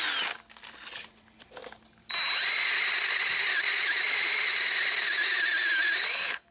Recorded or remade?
recorded